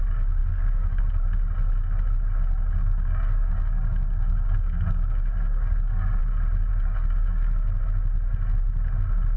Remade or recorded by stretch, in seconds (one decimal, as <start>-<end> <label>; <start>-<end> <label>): 0.0-0.4 recorded; 0.4-1.0 remade; 1.0-2.8 recorded; 2.8-6.2 remade; 6.2-6.7 recorded; 6.7-7.8 remade; 7.8-9.4 recorded